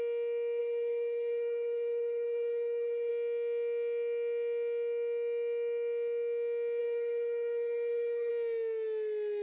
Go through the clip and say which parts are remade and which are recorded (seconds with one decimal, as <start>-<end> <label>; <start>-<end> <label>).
0.0-0.6 recorded; 0.6-3.1 remade; 3.1-6.8 recorded; 6.8-8.3 remade; 8.3-9.4 recorded